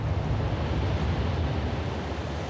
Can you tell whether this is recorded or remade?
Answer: recorded